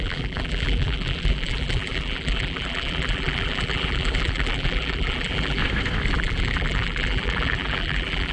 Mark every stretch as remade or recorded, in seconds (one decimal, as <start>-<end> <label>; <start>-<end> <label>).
0.0-5.6 remade; 5.6-6.1 recorded; 6.1-8.3 remade